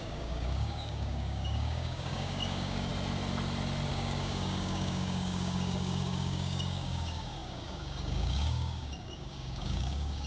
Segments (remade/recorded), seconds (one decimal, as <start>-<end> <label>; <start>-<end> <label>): 0.0-2.9 remade; 2.9-3.9 recorded; 3.9-10.3 remade